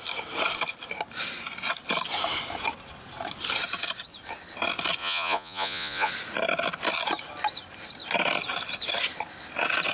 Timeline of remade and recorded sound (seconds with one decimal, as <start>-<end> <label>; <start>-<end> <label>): 0.0-5.0 recorded; 5.0-6.1 remade; 6.1-9.9 recorded